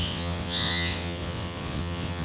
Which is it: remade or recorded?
remade